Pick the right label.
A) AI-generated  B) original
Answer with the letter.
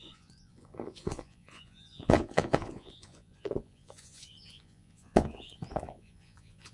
A